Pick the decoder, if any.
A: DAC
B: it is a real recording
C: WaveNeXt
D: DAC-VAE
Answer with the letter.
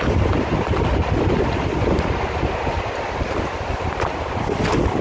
B